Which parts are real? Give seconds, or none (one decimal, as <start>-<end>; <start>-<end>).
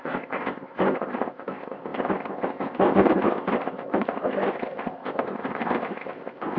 none